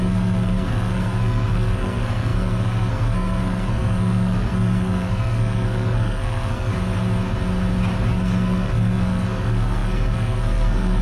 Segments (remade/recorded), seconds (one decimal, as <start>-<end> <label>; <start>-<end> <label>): 0.0-6.7 remade; 6.7-8.1 recorded; 8.1-11.0 remade